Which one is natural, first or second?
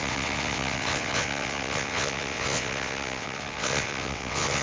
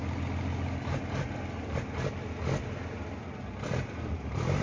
second